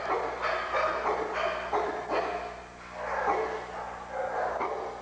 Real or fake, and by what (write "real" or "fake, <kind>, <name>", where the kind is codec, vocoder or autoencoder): real